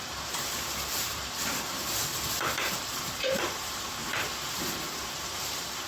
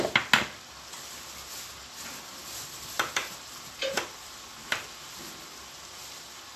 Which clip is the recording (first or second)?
second